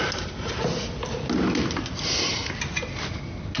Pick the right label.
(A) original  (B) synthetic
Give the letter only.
A